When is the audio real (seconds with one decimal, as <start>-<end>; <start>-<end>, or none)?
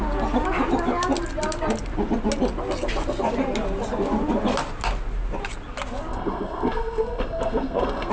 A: 0.0-6.1